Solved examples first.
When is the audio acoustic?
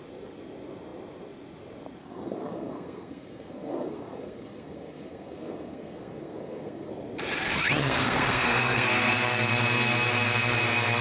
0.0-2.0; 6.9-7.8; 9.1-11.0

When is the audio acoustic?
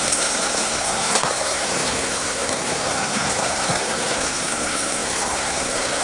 none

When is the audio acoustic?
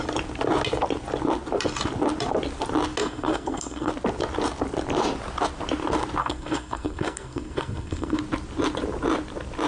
0.0-3.0; 3.9-6.2; 8.2-9.7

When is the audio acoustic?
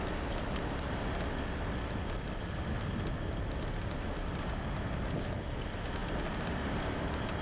0.0-7.4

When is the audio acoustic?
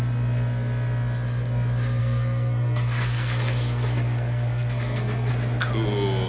0.0-2.0; 5.3-6.3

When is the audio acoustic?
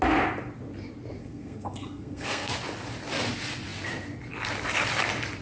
0.0-1.2; 2.5-5.4